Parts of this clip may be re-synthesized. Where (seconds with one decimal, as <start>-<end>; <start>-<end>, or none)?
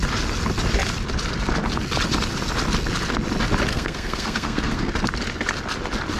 3.7-4.9